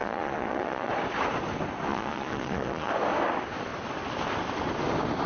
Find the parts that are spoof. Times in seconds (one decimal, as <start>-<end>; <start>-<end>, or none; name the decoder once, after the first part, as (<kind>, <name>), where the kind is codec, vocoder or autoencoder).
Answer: 0.0-0.9 (vocoder, Vocos); 1.9-2.9